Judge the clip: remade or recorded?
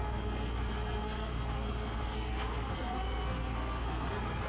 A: remade